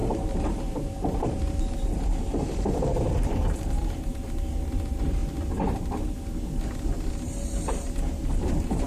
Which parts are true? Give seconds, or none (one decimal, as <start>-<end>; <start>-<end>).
5.2-8.1

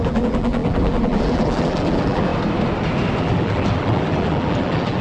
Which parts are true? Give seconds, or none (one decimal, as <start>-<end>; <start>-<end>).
2.3-3.2